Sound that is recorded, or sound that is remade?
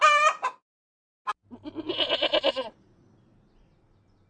recorded